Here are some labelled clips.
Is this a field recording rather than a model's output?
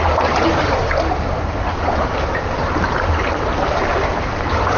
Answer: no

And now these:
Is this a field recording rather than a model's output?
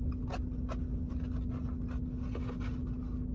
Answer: yes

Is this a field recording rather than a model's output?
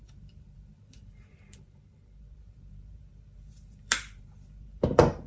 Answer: no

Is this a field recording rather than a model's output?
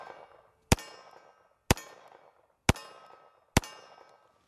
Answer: yes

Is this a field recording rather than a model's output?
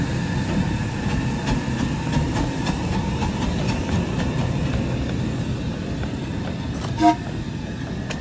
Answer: yes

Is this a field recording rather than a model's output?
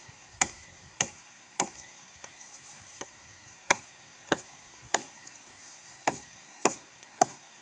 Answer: no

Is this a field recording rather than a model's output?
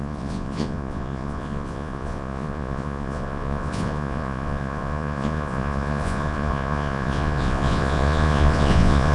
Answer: no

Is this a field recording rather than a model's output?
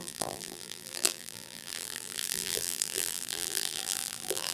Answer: no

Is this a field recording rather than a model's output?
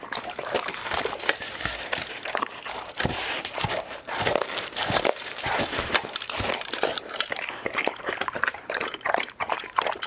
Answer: no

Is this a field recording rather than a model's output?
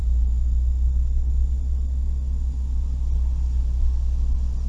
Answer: yes